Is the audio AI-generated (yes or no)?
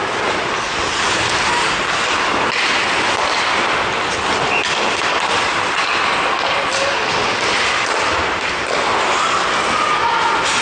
no